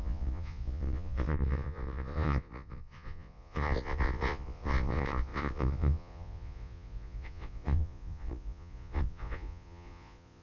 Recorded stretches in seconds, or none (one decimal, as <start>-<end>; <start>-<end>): none